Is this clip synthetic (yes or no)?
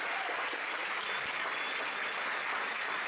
no